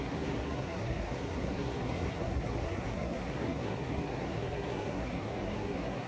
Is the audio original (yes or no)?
no